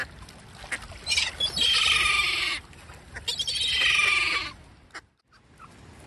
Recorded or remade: recorded